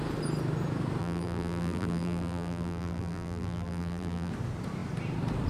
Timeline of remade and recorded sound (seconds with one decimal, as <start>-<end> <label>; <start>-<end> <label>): 0.0-1.0 recorded; 1.0-4.3 remade; 4.3-5.5 recorded